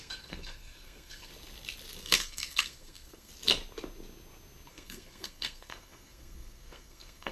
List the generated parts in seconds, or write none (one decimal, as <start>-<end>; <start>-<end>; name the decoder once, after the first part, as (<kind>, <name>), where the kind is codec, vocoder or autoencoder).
0.0-1.3 (codec, SNAC); 2.0-3.3; 4.7-7.3